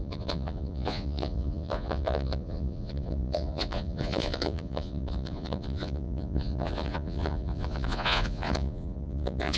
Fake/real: fake